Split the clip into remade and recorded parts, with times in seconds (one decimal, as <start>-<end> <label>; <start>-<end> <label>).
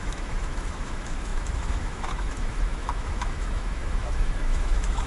0.0-5.1 remade